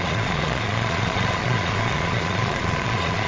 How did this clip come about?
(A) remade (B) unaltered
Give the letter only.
A